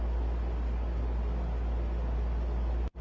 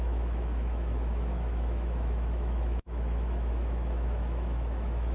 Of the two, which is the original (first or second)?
first